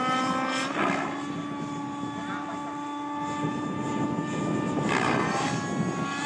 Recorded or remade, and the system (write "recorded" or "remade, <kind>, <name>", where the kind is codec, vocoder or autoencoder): recorded